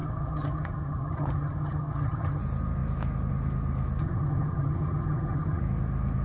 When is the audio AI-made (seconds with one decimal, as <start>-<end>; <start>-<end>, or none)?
0.0-2.4; 4.0-5.6

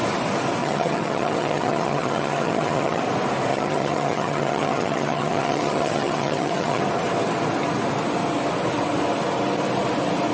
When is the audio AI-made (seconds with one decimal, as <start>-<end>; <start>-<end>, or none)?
0.6-3.0; 3.5-6.8

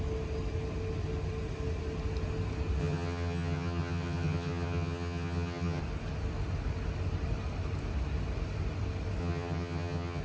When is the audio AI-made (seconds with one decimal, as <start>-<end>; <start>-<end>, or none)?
2.8-5.8; 9.2-10.2

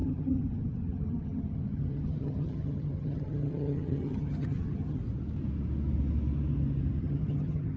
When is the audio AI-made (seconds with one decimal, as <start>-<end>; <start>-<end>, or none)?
0.0-5.0; 7.0-7.8